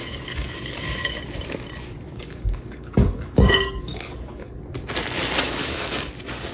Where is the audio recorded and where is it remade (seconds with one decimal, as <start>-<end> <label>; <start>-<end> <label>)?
0.0-1.2 remade; 1.2-2.1 recorded; 2.1-4.6 remade; 4.6-5.6 recorded; 5.6-6.1 remade; 6.1-6.5 recorded